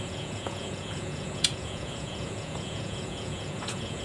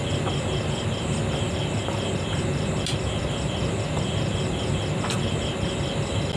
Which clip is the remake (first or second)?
first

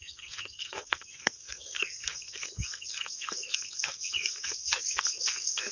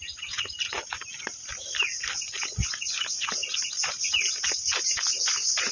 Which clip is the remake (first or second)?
first